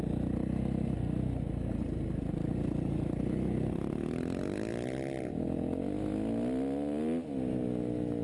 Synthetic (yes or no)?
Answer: no